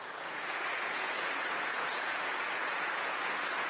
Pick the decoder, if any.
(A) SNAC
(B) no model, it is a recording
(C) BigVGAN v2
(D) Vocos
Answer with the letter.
D